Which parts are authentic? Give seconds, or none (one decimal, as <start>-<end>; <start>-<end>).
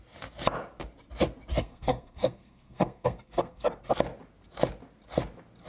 0.0-1.5; 3.7-5.7